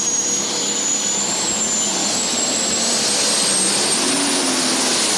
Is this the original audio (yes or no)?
yes